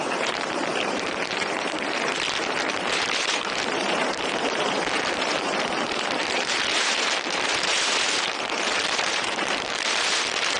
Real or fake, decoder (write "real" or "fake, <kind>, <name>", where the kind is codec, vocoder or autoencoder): fake, vocoder, BigVGAN v2